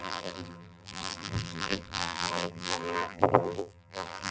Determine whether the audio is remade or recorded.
remade